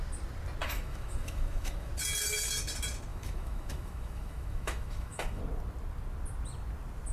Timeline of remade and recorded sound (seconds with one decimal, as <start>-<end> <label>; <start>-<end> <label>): 0.0-0.6 recorded; 0.6-1.9 remade; 1.9-3.1 recorded; 3.1-5.4 remade; 5.4-7.1 recorded